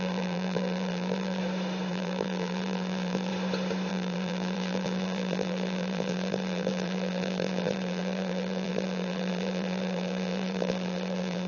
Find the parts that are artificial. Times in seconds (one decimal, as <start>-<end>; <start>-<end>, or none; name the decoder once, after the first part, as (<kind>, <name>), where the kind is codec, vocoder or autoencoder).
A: 0.0-1.4 (vocoder, BigVGAN v2); 1.9-3.3; 3.9-11.5